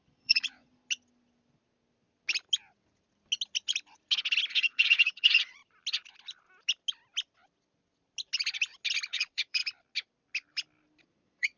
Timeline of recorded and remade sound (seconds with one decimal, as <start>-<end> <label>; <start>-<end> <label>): 0.0-0.7 remade; 0.7-4.5 recorded; 4.5-5.6 remade; 5.6-9.1 recorded; 9.1-9.6 remade; 9.6-11.0 recorded; 11.0-11.6 remade